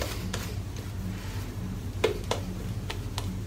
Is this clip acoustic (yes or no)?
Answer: yes